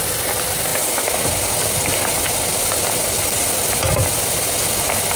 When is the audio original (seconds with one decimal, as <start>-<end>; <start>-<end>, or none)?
0.0-5.2